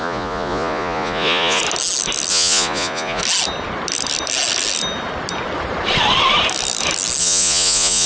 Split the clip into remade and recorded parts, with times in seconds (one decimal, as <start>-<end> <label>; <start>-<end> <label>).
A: 0.0-1.6 remade; 1.6-2.3 recorded; 2.3-3.2 remade; 3.2-7.2 recorded; 7.2-8.1 remade